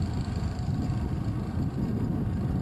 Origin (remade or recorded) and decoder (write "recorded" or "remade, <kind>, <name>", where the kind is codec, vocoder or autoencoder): remade, vocoder, BigVGAN v2